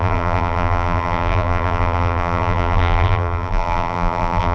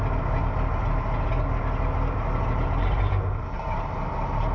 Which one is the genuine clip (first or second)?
second